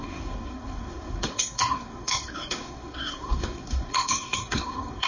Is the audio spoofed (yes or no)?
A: yes